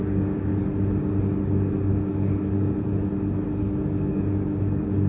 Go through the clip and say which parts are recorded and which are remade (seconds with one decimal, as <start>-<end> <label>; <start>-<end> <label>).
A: 0.0-0.5 remade; 0.5-3.6 recorded; 3.6-5.1 remade